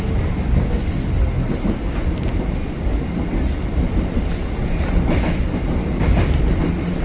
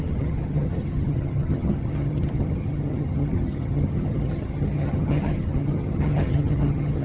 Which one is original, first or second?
first